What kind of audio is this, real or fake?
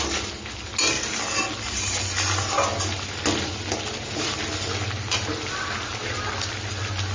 real